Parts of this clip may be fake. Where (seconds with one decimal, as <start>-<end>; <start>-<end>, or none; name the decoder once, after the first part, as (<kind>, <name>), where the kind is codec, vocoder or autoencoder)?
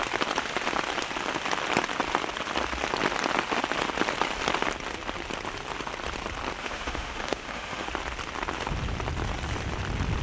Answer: 6.6-7.9 (autoencoder, DAC-VAE)